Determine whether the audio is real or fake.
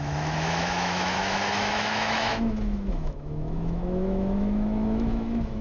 fake